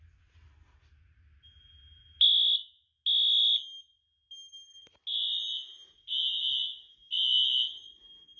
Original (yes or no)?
yes